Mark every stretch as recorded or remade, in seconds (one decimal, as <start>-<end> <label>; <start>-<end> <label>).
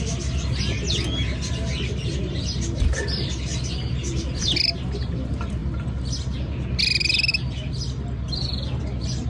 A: 0.0-9.3 recorded